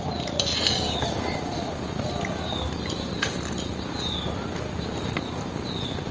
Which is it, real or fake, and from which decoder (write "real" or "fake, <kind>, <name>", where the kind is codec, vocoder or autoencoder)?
real